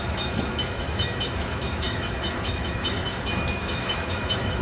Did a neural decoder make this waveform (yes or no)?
yes